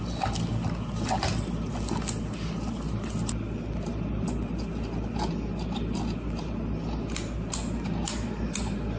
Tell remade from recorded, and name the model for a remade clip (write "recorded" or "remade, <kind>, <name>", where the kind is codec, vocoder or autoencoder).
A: recorded